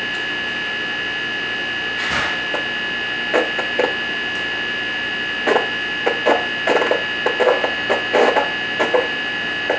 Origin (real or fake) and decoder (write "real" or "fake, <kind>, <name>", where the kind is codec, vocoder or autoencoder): real